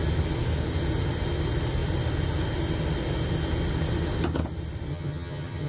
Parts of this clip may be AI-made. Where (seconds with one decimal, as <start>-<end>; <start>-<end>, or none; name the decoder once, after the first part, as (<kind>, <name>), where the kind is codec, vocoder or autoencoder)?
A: 4.9-5.7 (vocoder, HiFi-GAN)